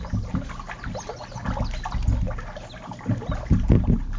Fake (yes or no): no